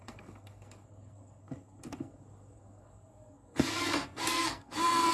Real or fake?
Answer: fake